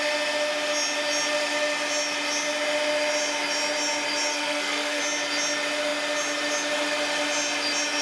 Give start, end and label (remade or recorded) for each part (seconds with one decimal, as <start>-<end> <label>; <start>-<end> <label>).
0.0-4.3 recorded; 4.3-5.0 remade; 5.0-8.0 recorded